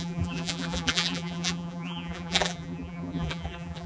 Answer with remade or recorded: remade